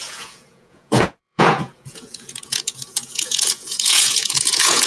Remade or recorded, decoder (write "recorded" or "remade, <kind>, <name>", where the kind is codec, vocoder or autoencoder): remade, vocoder, Vocos